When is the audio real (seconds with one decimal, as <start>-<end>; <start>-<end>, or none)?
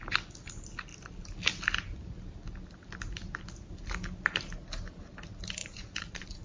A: 0.0-5.6